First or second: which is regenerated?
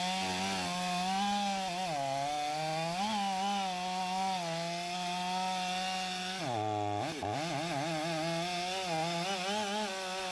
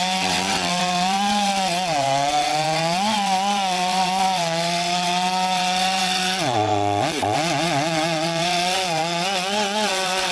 second